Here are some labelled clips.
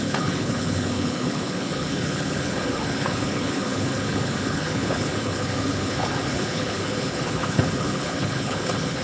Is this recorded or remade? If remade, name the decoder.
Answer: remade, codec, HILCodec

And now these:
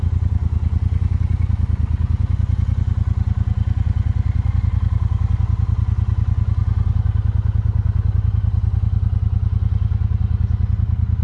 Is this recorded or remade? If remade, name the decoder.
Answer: recorded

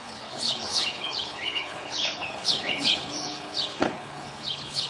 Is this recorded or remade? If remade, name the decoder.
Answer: remade, codec, HILCodec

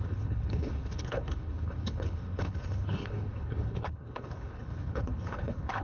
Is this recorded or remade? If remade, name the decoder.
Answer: remade, codec, HILCodec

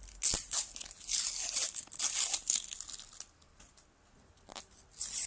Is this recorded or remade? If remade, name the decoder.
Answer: recorded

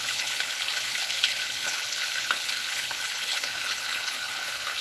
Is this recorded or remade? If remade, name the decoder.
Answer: remade, codec, HILCodec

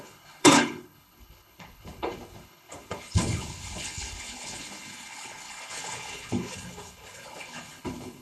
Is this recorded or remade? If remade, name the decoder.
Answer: remade, codec, HILCodec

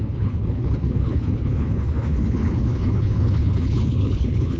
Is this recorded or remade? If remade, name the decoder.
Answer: remade, codec, HILCodec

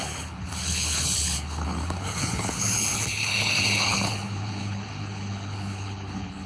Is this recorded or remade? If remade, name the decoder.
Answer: remade, codec, HILCodec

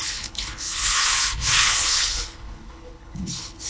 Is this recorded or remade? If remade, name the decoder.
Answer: remade, codec, HILCodec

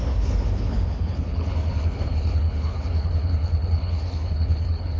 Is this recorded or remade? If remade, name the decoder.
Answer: remade, codec, HILCodec